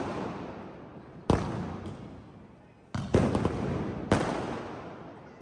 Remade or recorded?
recorded